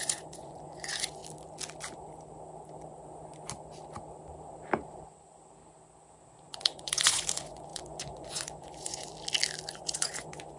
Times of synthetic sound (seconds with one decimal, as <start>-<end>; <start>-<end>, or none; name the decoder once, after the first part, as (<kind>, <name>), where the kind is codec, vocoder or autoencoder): 0.0-1.2 (vocoder, Vocos); 6.4-9.1; 9.7-10.6